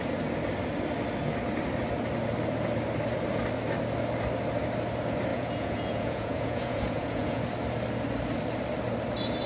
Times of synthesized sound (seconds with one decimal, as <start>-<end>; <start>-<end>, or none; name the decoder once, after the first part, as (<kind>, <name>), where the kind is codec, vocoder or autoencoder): 5.3-7.4 (vocoder, Vocos)